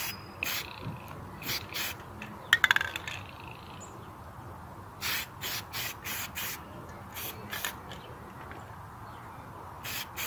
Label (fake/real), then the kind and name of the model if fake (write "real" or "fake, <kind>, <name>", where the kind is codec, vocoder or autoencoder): real